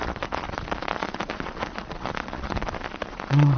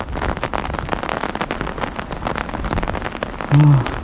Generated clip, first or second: first